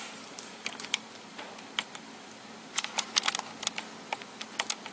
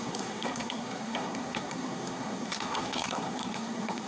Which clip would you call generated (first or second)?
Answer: second